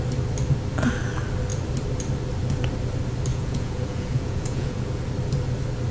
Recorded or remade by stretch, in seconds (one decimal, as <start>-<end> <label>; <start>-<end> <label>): 0.0-3.3 recorded; 3.3-4.9 remade; 4.9-5.9 recorded